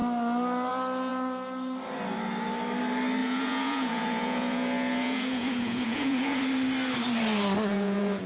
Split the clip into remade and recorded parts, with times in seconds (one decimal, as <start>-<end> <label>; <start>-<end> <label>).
0.0-3.2 recorded; 3.2-6.4 remade; 6.4-7.7 recorded; 7.7-8.3 remade